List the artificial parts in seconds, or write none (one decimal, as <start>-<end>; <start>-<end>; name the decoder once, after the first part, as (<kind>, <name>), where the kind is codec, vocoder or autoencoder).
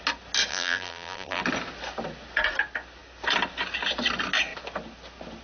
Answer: 0.5-1.4 (vocoder, BigVGAN v2)